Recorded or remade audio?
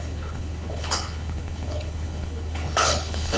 remade